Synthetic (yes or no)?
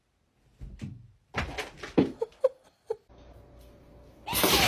no